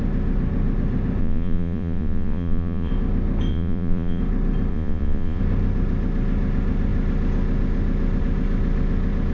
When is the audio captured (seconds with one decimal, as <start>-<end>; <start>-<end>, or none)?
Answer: 0.0-1.2; 2.9-3.5; 4.2-4.7; 5.4-9.3